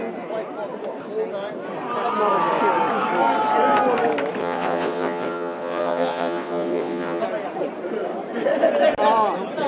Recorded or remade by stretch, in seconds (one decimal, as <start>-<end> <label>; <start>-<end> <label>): 0.0-4.4 recorded; 4.4-7.2 remade; 7.2-9.7 recorded